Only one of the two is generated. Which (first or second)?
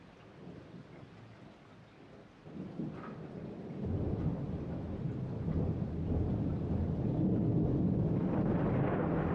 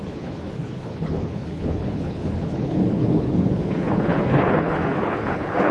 second